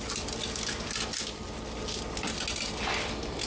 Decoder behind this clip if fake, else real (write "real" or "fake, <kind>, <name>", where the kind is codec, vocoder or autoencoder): real